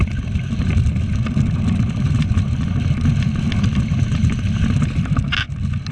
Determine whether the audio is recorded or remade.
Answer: recorded